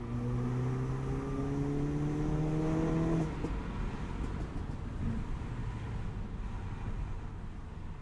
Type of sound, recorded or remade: recorded